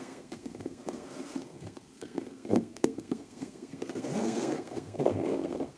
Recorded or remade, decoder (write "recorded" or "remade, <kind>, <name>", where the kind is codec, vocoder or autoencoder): remade, codec, SNAC